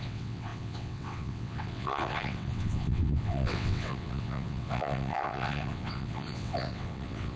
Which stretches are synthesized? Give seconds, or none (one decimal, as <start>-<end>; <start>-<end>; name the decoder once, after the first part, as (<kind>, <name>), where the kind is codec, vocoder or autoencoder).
0.0-7.4 (vocoder, WaveNeXt)

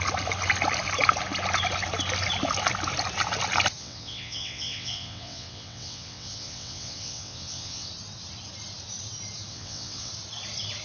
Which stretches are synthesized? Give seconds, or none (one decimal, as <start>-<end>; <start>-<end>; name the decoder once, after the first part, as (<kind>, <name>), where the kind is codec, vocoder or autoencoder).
3.8-7.9 (vocoder, WaveNeXt); 9.5-10.1

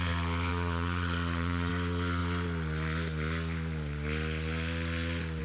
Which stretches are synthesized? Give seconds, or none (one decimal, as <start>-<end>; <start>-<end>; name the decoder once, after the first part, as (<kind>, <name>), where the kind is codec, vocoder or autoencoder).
0.5-1.7 (vocoder, WaveNeXt)

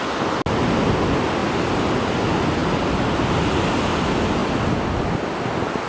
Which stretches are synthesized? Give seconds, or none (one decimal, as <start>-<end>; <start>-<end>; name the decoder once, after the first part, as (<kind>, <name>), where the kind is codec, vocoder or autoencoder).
none

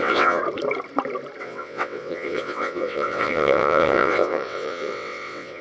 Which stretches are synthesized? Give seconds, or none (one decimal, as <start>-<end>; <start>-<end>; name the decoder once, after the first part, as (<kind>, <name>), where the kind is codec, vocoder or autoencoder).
0.0-0.4 (vocoder, WaveNeXt); 1.4-5.6

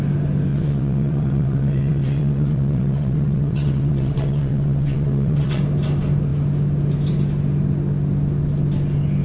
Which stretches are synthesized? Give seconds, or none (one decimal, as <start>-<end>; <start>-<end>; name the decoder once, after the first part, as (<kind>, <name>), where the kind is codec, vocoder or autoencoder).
0.5-5.6 (vocoder, WaveNeXt)

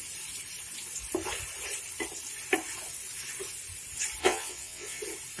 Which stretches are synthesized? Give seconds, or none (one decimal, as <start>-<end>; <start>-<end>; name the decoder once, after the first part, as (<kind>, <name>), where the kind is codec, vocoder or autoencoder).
4.2-5.0 (vocoder, WaveNeXt)

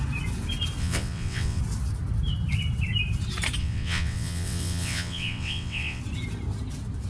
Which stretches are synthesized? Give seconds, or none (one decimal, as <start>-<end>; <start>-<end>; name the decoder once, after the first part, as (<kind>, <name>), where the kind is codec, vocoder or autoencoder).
0.8-1.6 (vocoder, WaveNeXt); 3.6-6.0